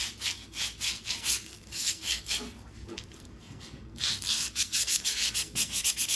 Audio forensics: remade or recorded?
remade